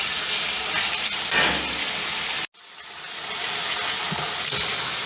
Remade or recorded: recorded